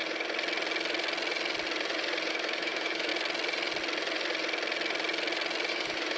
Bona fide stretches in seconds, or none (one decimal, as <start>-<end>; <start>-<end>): 0.0-2.3; 3.1-5.7

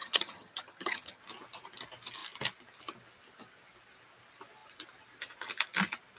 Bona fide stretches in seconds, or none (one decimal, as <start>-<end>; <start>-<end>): 1.2-6.2

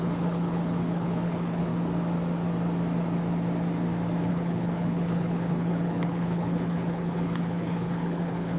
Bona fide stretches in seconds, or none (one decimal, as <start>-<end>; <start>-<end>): 1.7-4.3

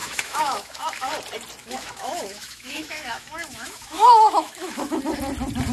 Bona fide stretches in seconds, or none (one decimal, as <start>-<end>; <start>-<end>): 1.1-1.6; 5.0-5.7